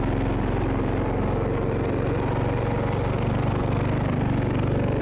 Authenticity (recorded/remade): recorded